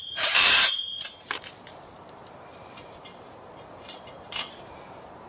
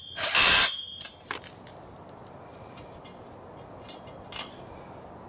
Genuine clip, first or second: second